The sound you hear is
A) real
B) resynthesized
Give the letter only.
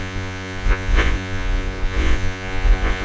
B